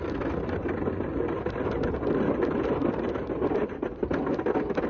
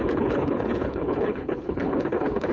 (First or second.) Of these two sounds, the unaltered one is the first